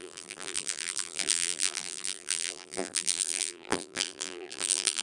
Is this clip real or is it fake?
fake